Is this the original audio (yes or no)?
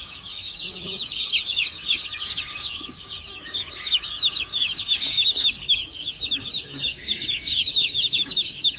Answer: no